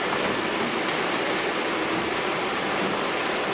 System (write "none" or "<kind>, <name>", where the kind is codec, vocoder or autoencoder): none